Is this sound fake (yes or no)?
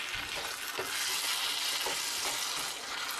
no